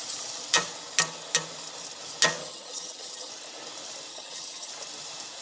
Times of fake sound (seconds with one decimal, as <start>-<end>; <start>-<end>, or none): 2.4-3.3; 4.1-4.7